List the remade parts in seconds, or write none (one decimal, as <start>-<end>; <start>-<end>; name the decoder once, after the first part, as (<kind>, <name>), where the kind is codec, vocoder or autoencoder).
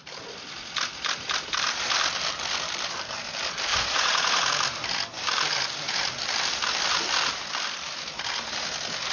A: 3.7-4.5 (vocoder, Vocos)